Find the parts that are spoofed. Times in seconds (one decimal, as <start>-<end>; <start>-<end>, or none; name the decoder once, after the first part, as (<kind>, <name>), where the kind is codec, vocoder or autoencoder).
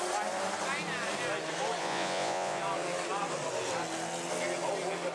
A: 1.8-2.6 (vocoder, Vocos)